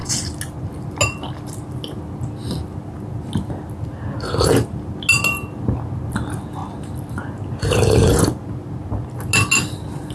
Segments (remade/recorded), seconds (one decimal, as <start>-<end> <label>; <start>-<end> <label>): 0.0-10.1 recorded